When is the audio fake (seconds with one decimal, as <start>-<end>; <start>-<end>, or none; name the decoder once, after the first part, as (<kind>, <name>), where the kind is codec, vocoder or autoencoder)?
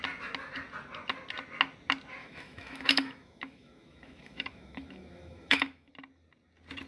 2.2-5.9 (autoencoder, DAC-VAE)